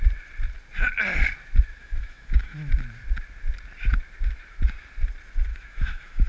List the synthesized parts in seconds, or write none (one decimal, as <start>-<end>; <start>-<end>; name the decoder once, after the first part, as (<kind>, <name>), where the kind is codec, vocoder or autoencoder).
1.8-2.7 (autoencoder, DAC-VAE); 5.5-6.3